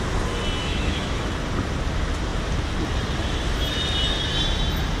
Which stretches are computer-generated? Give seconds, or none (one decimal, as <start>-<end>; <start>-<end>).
0.6-1.3